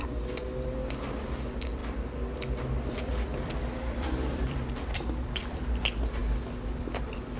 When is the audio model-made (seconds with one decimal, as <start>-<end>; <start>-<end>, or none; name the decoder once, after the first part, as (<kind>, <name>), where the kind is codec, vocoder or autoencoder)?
1.8-5.6 (vocoder, BigVGAN v2)

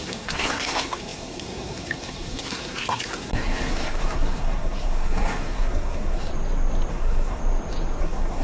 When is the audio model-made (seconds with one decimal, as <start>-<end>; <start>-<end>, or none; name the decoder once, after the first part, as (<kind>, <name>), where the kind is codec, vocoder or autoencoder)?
0.0-6.3 (codec, SNAC); 6.9-7.4; 8.0-8.4

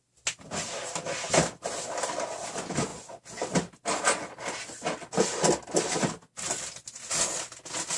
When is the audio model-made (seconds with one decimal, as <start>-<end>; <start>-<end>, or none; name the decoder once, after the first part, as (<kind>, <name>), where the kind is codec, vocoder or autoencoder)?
none

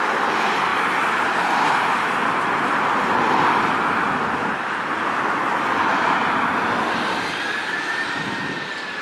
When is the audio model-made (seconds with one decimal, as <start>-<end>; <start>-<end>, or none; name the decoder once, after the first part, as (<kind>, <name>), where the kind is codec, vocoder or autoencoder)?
none